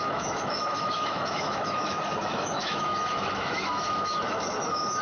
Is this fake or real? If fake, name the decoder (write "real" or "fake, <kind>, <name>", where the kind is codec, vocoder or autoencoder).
fake, autoencoder, DAC-VAE